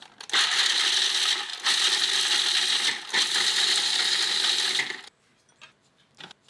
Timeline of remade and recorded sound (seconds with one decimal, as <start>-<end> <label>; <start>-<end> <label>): 0.0-6.5 recorded

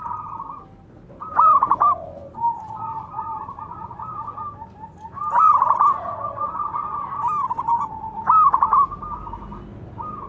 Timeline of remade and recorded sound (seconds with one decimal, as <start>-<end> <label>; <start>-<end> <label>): 0.0-3.1 recorded; 3.1-3.6 remade; 3.6-10.3 recorded

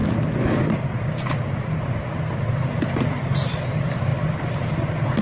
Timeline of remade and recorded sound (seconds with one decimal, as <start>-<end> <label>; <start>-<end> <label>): 0.0-3.1 recorded; 3.1-4.1 remade; 4.1-4.7 recorded; 4.7-5.2 remade